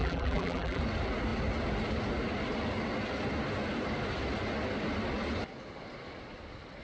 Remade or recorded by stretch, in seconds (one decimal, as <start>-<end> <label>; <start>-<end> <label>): 0.0-0.8 remade; 0.8-6.8 recorded